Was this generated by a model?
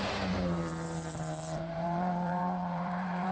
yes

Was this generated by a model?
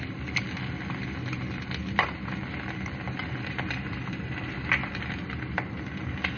no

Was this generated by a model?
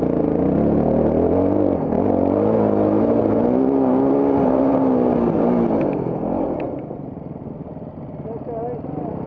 no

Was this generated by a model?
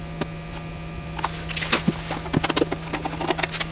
no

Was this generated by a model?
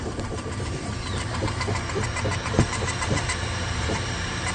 yes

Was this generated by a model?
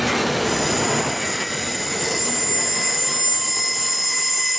no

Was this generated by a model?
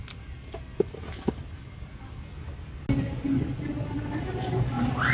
no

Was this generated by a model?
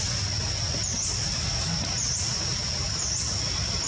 no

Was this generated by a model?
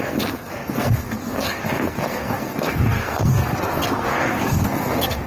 yes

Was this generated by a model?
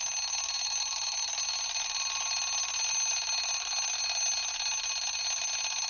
no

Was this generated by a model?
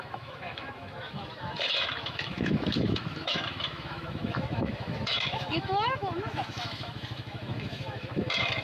yes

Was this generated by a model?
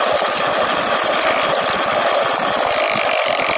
no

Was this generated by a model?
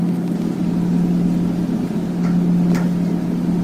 no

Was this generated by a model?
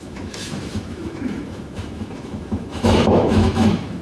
yes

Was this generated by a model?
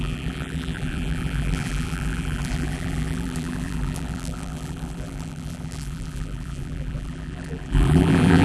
yes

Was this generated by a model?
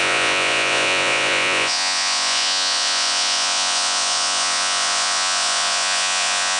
yes